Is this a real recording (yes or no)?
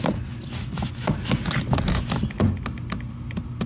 yes